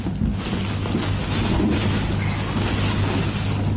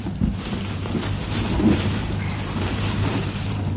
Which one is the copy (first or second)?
second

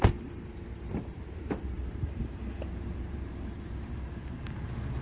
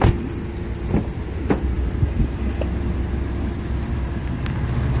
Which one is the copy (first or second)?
first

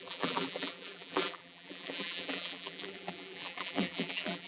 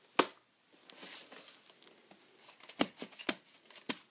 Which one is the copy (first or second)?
first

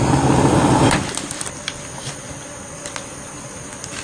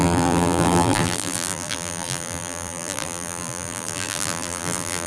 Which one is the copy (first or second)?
second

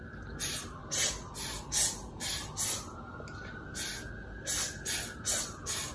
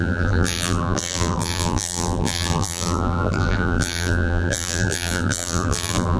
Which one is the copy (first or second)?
second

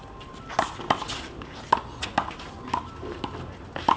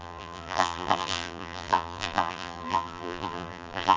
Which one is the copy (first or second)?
second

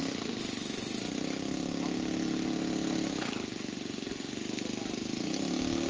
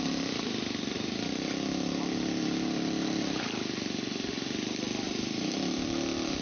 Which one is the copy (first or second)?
second